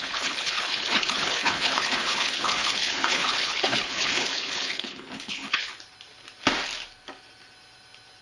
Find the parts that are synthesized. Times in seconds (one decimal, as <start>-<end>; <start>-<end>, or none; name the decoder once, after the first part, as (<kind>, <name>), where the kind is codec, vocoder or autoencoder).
0.0-5.7 (codec, HILCodec)